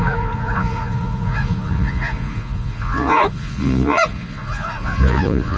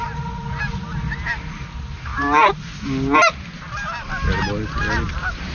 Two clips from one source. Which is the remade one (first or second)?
first